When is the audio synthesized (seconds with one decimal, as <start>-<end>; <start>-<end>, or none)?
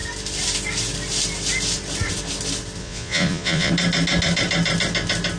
2.8-3.7